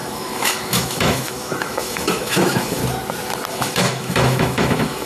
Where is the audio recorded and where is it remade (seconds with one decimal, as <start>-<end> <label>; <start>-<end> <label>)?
0.0-2.8 remade; 2.8-3.5 recorded; 3.5-5.1 remade